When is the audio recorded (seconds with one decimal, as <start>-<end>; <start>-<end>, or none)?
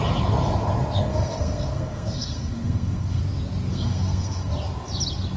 0.0-1.1; 3.2-3.7; 4.5-5.4